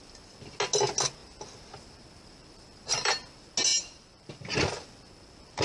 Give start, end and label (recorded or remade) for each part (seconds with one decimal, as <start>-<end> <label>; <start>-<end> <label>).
0.0-1.2 recorded; 1.2-3.1 remade; 3.1-3.7 recorded; 3.7-4.6 remade; 4.6-5.6 recorded